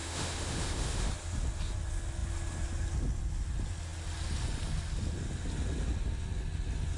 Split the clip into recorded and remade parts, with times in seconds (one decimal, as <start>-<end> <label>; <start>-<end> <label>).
0.0-1.1 remade; 1.1-7.0 recorded